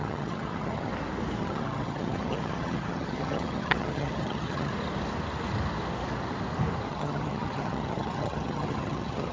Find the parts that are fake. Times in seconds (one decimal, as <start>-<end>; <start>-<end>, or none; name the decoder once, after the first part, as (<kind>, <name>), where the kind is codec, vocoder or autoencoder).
0.0-0.9 (vocoder, HiFi-GAN); 1.4-4.7; 6.9-9.3